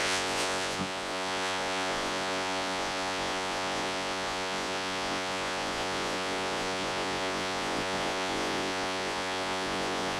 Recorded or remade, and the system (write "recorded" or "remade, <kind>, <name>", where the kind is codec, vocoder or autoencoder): remade, vocoder, Vocos